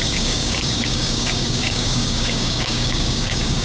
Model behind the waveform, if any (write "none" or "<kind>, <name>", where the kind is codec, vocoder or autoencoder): codec, DAC